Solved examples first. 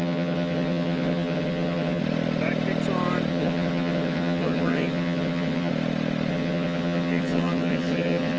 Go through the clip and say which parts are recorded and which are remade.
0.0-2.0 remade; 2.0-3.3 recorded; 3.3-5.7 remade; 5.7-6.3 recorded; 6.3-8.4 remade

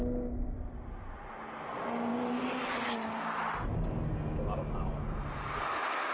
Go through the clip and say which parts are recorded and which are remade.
0.0-6.1 recorded

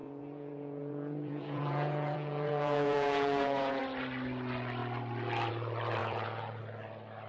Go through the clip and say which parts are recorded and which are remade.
0.0-3.8 remade; 3.8-6.0 recorded; 6.0-6.6 remade; 6.6-7.3 recorded

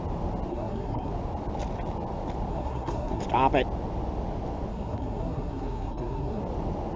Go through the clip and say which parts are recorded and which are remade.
0.0-0.5 recorded; 0.5-1.1 remade; 1.1-2.5 recorded; 2.5-3.2 remade; 3.2-4.7 recorded; 4.7-6.4 remade; 6.4-7.0 recorded